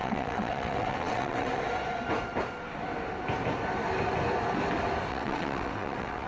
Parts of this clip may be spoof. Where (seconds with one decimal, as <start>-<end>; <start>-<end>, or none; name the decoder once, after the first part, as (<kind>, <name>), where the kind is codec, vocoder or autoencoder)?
0.0-1.6 (vocoder, WaveNeXt); 5.1-6.3